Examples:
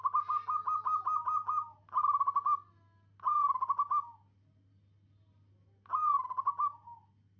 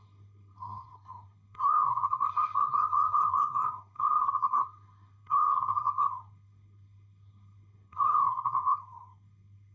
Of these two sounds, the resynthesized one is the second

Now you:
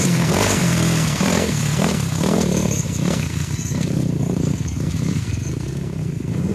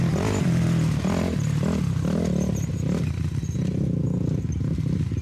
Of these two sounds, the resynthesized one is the first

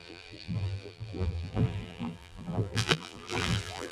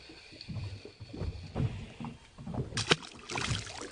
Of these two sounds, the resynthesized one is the first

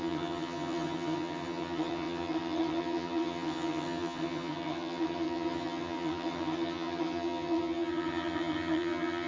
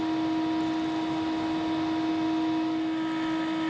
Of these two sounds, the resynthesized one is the first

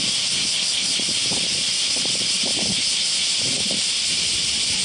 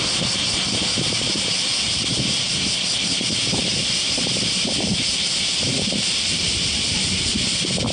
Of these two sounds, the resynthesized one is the second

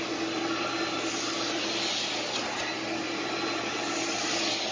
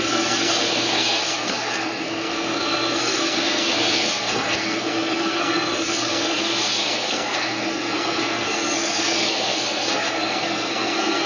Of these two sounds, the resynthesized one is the second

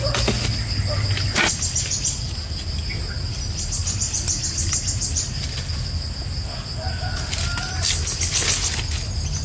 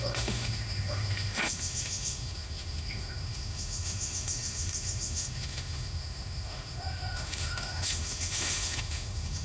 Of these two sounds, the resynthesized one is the second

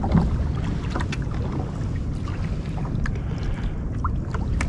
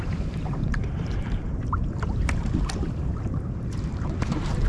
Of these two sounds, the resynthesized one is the second